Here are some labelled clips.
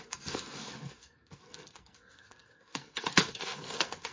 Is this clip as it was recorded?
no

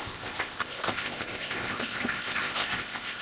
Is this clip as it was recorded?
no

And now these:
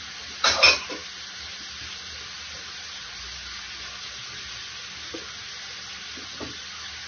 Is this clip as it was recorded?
yes